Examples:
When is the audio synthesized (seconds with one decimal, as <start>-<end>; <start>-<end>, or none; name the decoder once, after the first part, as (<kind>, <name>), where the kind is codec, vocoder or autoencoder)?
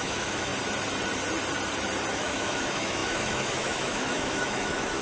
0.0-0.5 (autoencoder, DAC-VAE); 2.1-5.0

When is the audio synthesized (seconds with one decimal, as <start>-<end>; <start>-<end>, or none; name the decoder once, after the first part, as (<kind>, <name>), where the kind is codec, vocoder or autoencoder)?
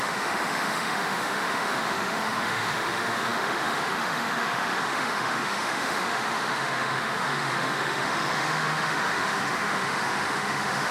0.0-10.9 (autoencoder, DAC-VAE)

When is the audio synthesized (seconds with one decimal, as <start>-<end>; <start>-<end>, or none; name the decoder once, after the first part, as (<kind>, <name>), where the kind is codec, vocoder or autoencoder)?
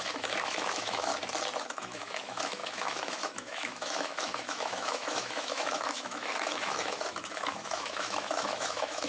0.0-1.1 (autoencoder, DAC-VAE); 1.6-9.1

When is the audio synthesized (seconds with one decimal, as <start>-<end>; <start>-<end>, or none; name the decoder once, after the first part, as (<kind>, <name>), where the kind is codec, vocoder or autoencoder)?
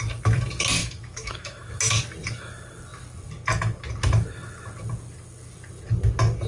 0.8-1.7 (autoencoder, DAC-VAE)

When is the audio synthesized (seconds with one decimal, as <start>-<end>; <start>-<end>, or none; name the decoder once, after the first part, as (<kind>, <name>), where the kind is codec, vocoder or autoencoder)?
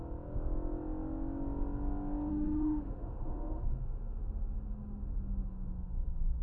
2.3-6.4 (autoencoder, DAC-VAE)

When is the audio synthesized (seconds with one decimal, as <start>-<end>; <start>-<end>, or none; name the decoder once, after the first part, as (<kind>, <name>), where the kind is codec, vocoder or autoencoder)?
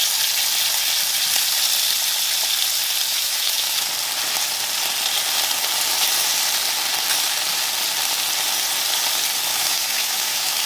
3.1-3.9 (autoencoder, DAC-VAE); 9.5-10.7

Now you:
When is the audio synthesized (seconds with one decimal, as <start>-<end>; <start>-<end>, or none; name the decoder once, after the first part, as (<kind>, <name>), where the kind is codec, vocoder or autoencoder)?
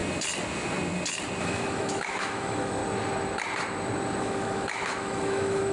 1.4-2.8 (autoencoder, DAC-VAE); 4.2-5.7